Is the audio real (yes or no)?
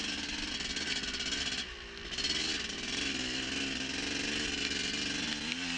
yes